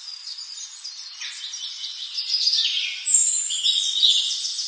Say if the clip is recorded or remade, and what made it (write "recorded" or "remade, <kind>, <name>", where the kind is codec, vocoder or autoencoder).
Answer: recorded